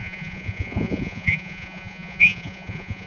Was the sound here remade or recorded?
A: remade